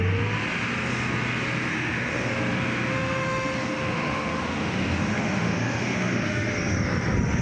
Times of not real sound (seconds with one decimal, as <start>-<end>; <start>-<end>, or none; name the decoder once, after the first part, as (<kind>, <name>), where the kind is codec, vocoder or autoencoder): 1.7-2.3 (autoencoder, DAC-VAE); 2.9-6.5